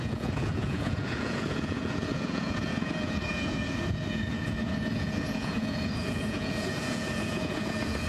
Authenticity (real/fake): fake